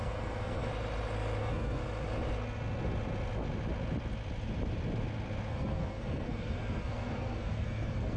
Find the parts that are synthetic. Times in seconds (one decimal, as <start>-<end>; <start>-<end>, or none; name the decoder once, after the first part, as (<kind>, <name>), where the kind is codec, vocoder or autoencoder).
0.0-0.7 (codec, SNAC); 1.4-1.8; 5.5-8.2